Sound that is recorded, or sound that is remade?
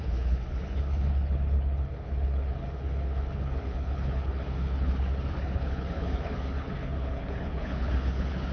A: remade